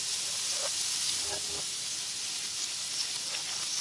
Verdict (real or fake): real